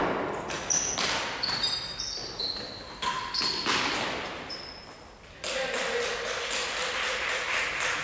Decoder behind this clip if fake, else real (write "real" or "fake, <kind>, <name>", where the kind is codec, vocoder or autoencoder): real